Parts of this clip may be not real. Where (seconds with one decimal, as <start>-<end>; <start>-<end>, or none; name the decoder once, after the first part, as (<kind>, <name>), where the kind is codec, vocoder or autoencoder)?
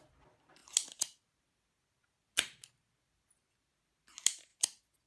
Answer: none